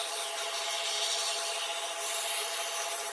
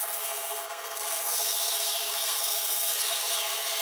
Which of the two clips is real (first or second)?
first